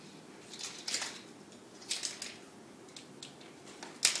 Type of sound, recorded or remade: recorded